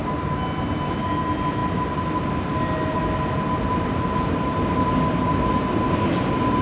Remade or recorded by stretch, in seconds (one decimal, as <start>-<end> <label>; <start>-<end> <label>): 0.0-6.6 recorded